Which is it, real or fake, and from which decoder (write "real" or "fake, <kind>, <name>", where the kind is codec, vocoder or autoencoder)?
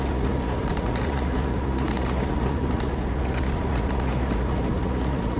fake, vocoder, Vocos